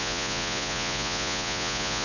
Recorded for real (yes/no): no